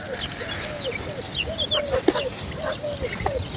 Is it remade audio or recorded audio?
recorded